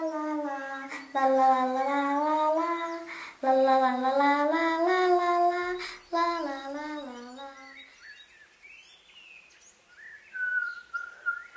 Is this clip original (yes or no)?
yes